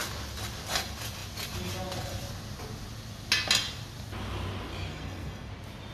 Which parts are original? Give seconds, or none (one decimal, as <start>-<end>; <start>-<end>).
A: 0.0-4.9; 5.5-5.9